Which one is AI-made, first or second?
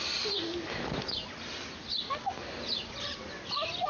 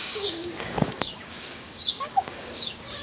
second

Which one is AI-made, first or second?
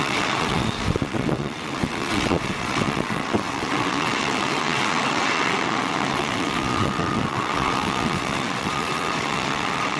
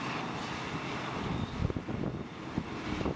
first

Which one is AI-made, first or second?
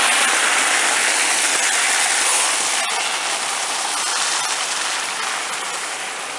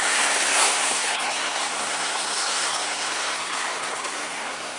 second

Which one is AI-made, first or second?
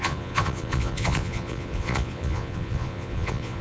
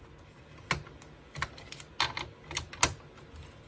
first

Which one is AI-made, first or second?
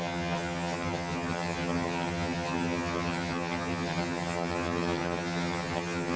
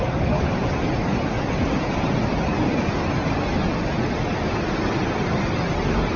first